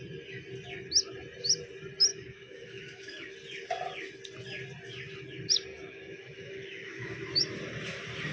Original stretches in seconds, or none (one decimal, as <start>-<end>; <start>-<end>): 0.0-2.1; 3.3-5.7; 7.6-8.3